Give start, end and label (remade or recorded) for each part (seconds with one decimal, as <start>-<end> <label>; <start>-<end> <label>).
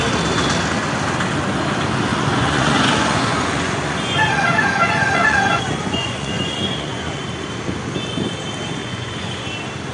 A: 0.0-2.1 recorded; 2.1-7.2 remade; 7.2-8.8 recorded; 8.8-9.5 remade; 9.5-9.9 recorded